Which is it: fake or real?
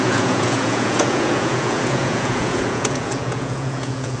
fake